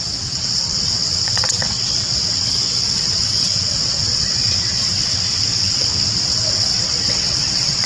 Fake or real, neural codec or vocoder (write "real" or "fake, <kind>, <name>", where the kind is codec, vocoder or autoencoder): fake, vocoder, WaveNeXt